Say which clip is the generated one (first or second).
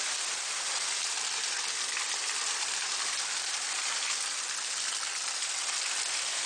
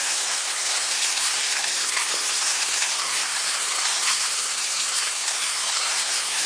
second